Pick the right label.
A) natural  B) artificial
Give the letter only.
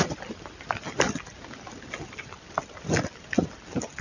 A